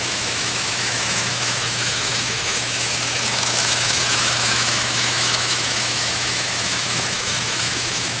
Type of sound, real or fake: fake